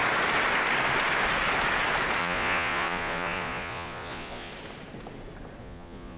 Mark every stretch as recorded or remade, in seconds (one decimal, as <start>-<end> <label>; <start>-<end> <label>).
0.0-2.2 recorded; 2.2-4.5 remade; 4.5-5.6 recorded; 5.6-6.2 remade